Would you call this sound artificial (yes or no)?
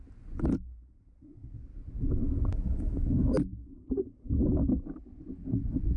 no